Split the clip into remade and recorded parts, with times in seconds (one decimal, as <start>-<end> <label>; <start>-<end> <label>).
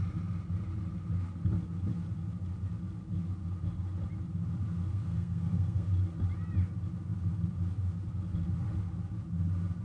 0.0-4.9 recorded; 4.9-5.9 remade; 5.9-9.8 recorded